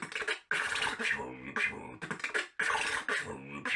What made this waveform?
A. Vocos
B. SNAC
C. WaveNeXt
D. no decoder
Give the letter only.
D